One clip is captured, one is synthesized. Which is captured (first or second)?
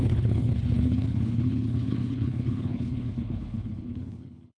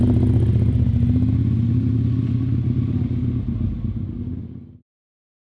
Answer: second